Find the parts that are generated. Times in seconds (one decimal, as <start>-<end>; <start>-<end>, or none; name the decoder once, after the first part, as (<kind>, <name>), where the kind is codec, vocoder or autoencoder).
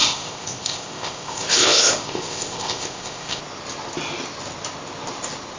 0.0-3.4 (codec, ZipCodec)